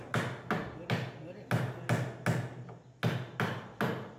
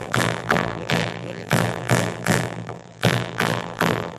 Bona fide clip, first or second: first